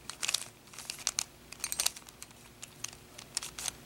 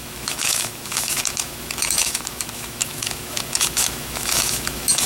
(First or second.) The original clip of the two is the first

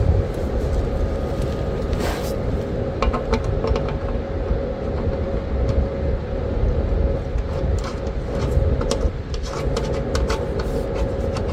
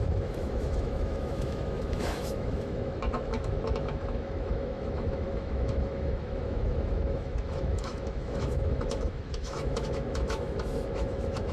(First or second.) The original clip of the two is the first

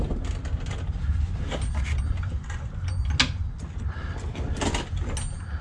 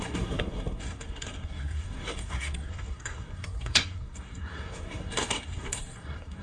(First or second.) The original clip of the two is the first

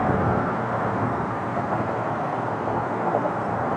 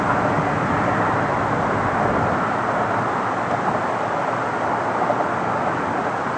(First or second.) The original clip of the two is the second